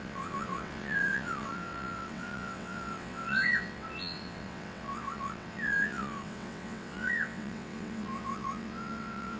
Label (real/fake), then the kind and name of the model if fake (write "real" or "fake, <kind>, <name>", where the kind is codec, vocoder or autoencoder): fake, vocoder, WaveNeXt